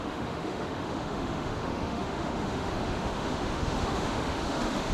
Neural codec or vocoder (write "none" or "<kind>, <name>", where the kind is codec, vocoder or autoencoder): autoencoder, DAC-VAE